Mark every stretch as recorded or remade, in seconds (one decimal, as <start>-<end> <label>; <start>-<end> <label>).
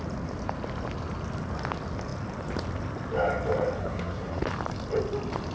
0.0-3.8 recorded; 3.8-4.4 remade; 4.4-5.5 recorded